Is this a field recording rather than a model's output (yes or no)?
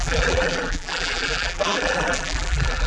no